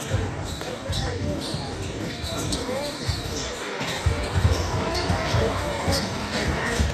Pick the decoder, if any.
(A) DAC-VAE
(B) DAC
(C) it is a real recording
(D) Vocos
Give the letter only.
B